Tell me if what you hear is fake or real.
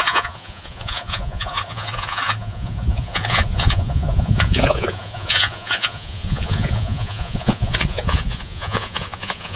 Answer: fake